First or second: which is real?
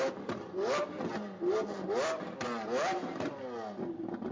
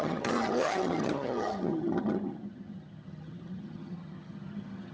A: first